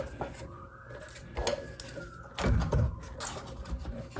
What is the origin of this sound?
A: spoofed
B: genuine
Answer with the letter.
B